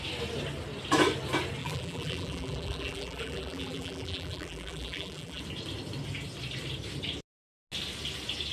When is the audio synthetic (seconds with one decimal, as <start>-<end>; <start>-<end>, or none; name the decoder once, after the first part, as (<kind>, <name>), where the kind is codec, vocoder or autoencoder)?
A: 1.6-5.4 (vocoder, BigVGAN v2)